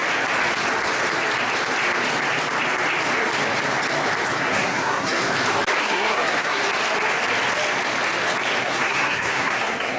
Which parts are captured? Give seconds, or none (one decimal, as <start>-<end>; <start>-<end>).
0.0-4.3; 5.2-5.8; 6.6-8.6